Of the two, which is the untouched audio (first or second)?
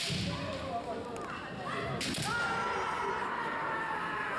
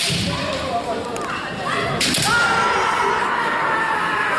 first